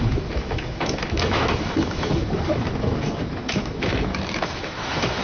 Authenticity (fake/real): fake